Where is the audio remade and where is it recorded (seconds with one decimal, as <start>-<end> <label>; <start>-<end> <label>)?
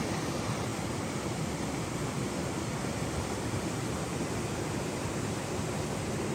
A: 0.0-6.3 recorded